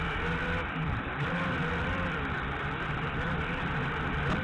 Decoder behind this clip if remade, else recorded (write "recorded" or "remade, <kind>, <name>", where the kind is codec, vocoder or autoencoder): remade, vocoder, BigVGAN v2